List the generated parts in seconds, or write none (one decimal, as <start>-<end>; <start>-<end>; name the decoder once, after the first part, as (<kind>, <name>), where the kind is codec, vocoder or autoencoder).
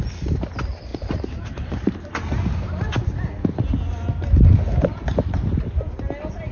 0.9-2.1 (vocoder, BigVGAN v2)